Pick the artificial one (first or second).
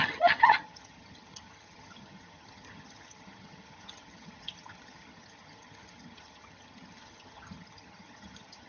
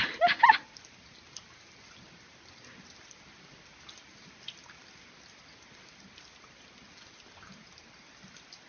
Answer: first